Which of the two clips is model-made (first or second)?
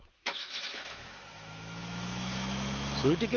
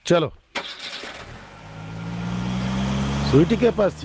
first